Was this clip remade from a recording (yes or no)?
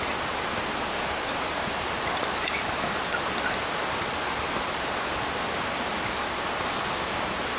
no